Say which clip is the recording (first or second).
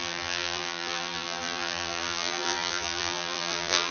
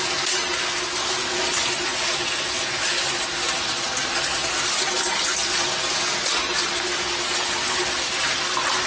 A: second